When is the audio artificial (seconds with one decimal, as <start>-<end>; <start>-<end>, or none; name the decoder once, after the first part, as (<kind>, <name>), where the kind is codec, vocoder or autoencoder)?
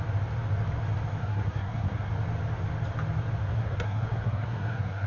1.2-2.1 (codec, SNAC); 3.5-5.1